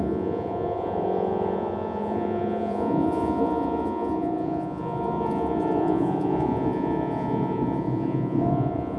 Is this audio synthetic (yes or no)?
yes